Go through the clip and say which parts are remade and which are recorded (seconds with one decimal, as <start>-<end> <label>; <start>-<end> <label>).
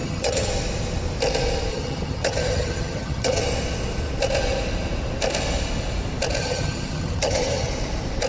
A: 0.0-0.5 remade; 0.5-1.7 recorded; 1.7-3.4 remade; 3.4-6.4 recorded; 6.4-7.7 remade; 7.7-8.3 recorded